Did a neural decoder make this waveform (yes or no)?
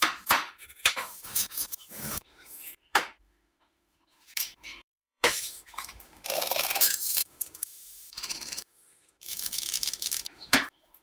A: yes